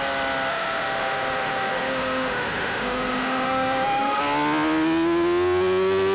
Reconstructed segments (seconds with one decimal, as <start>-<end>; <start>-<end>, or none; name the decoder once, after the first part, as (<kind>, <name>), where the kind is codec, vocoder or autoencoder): 0.5-4.2 (autoencoder, DAC-VAE)

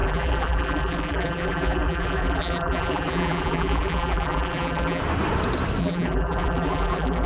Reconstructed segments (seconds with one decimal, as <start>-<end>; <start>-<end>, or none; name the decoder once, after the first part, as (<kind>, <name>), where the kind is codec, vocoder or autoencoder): 0.0-5.0 (vocoder, BigVGAN v2); 5.8-7.3